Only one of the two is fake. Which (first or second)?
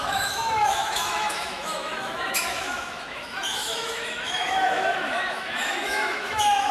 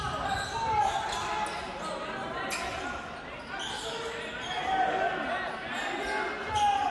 first